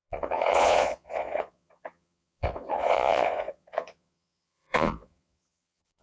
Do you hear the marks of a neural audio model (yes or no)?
yes